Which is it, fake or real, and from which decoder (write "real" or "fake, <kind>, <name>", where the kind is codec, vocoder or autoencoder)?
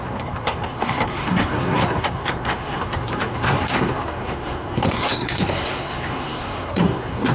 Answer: fake, codec, SNAC